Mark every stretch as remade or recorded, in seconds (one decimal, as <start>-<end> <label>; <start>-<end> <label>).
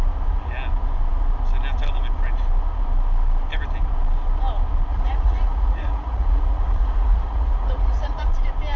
0.0-4.9 recorded; 4.9-8.3 remade; 8.3-8.8 recorded